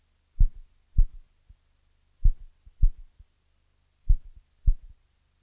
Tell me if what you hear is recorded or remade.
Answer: recorded